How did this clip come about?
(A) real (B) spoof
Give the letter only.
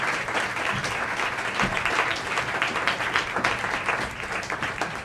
A